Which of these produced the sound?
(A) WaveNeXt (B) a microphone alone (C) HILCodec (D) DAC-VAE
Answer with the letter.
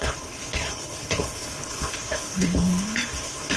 C